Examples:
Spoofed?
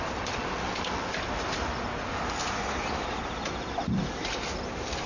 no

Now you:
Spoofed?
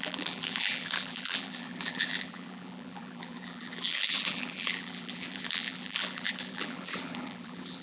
yes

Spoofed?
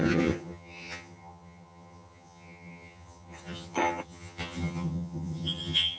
yes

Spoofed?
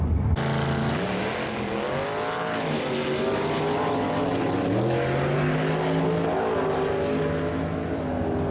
no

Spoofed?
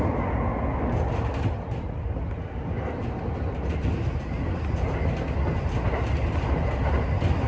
no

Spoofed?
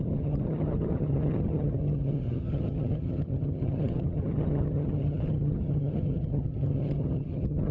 yes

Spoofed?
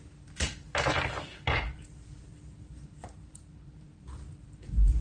yes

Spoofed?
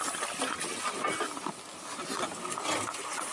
no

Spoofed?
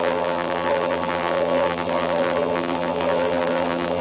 yes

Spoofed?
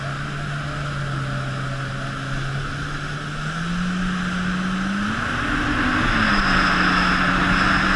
no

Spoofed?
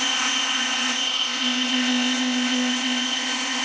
yes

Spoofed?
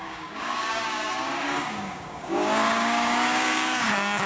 yes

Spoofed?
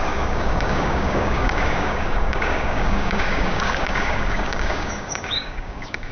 yes